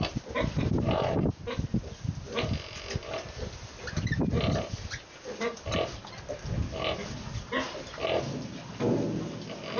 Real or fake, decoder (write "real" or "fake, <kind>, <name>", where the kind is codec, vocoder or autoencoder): real